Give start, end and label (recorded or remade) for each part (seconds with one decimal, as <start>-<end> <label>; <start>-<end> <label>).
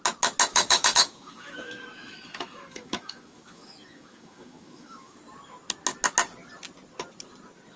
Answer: 0.0-0.5 recorded; 0.5-5.2 remade; 5.2-7.8 recorded